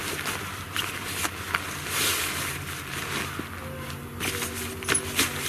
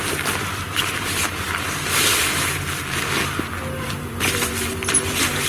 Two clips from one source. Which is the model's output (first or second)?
second